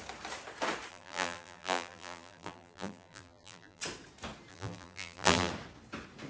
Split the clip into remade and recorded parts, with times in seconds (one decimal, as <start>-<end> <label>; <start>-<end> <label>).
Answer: 0.0-0.9 recorded; 0.9-3.8 remade; 3.8-4.5 recorded; 4.5-5.5 remade; 5.5-6.3 recorded